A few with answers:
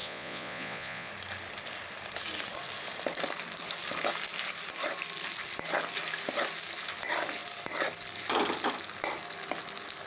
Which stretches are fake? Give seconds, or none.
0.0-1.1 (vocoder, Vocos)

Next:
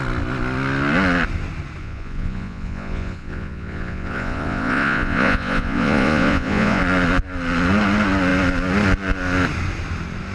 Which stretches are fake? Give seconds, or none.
1.8-6.8 (vocoder, Vocos)

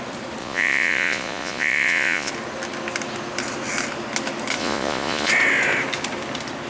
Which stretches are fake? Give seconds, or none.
0.4-2.3 (vocoder, Vocos); 4.6-5.3

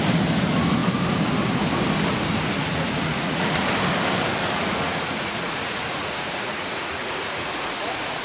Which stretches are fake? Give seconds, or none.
2.7-3.6 (vocoder, Vocos); 4.4-8.2

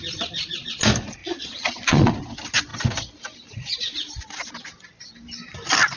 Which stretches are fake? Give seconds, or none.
1.2-2.1 (vocoder, Vocos)